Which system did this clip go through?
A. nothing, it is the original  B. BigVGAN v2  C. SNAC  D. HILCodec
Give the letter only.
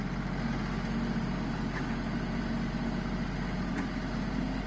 A